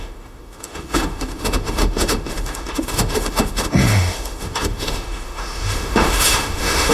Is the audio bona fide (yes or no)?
no